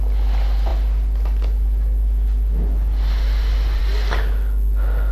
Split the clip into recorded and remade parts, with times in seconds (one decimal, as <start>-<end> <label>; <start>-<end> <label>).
0.0-5.1 recorded